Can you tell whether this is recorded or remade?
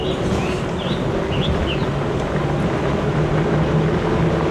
recorded